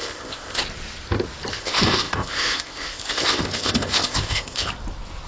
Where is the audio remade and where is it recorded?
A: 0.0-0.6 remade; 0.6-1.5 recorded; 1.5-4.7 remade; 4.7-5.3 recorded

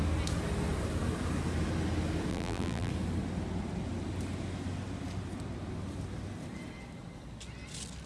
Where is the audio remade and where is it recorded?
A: 0.0-2.3 recorded; 2.3-2.9 remade; 2.9-8.1 recorded

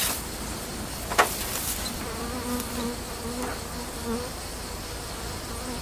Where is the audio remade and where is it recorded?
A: 0.0-3.2 remade; 3.2-5.8 recorded

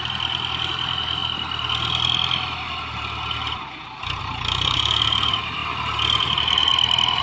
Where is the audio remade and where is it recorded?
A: 0.0-1.2 remade; 1.2-4.2 recorded; 4.2-5.6 remade; 5.6-6.2 recorded; 6.2-6.7 remade; 6.7-7.2 recorded

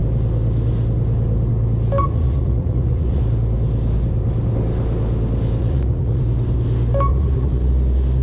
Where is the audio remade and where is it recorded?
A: 0.0-2.0 recorded; 2.0-3.2 remade; 3.2-5.6 recorded; 5.6-6.2 remade; 6.2-7.1 recorded; 7.1-7.7 remade; 7.7-8.2 recorded

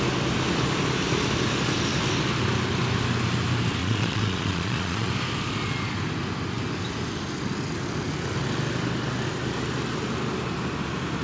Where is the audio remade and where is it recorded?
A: 0.0-3.8 recorded; 3.8-5.1 remade; 5.1-11.2 recorded